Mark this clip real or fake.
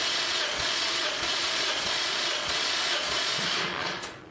fake